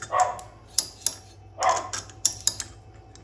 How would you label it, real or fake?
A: real